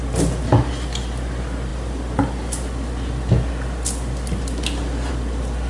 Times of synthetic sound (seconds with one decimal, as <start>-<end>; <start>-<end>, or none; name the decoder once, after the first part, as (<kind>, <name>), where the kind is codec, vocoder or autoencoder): none